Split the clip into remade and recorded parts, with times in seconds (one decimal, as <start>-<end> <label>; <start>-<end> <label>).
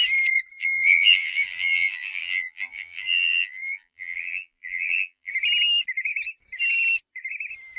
0.0-0.6 recorded; 0.6-5.3 remade; 5.3-7.8 recorded